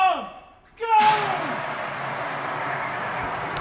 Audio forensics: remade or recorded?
recorded